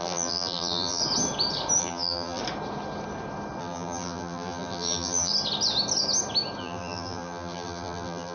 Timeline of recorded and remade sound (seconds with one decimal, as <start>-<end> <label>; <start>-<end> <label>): 0.0-1.0 remade; 1.0-1.8 recorded; 1.8-2.4 remade; 2.4-3.6 recorded; 3.6-5.3 remade; 5.3-6.6 recorded; 6.6-8.3 remade